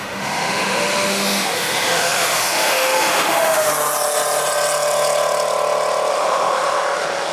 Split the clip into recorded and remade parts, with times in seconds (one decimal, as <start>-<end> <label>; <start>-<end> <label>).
0.0-3.7 remade; 3.7-6.1 recorded; 6.1-7.3 remade